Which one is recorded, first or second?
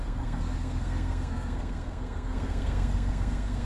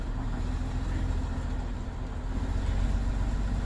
second